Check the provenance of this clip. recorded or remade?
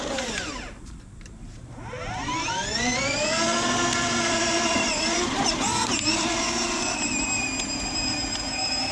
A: remade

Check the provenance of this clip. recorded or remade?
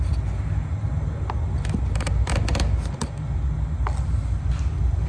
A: recorded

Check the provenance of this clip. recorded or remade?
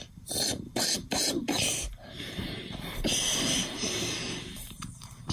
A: remade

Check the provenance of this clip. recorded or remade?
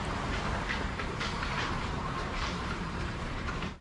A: remade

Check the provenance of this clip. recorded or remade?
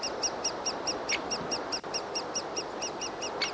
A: recorded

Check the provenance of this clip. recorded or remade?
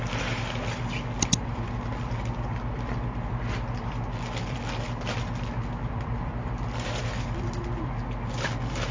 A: remade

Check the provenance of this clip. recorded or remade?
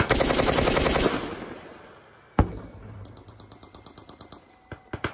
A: recorded